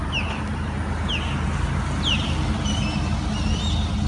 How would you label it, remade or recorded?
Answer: recorded